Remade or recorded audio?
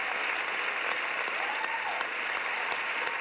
recorded